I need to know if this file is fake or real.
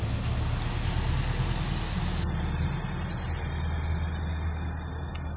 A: real